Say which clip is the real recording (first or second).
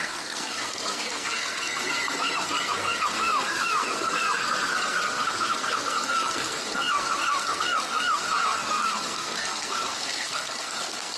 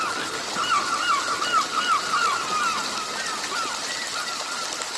second